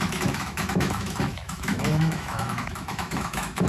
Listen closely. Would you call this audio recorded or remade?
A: remade